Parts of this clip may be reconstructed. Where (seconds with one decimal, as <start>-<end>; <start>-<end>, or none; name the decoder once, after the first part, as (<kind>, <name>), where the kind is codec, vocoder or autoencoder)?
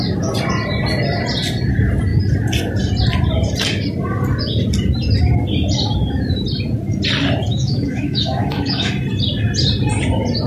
7.5-8.9 (autoencoder, DAC-VAE)